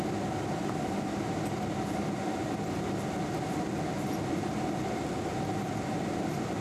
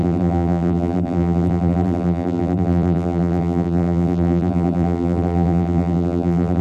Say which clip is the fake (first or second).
second